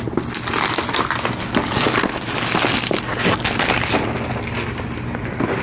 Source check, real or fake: real